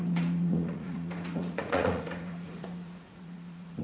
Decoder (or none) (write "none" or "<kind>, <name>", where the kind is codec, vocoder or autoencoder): vocoder, Vocos